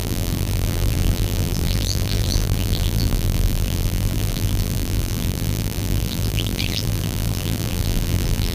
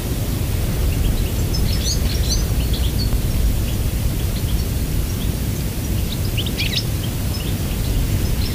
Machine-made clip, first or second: first